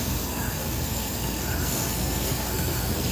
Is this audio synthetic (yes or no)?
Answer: yes